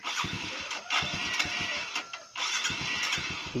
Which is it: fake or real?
real